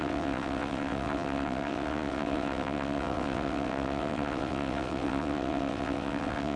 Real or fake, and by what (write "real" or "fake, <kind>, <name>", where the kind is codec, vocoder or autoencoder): fake, vocoder, WaveNeXt